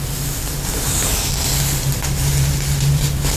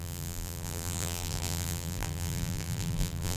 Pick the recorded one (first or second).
first